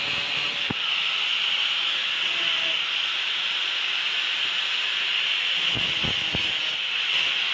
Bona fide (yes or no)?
yes